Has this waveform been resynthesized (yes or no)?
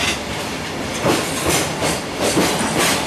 no